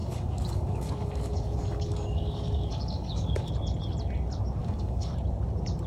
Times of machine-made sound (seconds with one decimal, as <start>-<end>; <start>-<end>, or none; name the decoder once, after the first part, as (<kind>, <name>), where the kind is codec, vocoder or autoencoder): 0.0-3.5 (codec, DAC); 4.6-5.1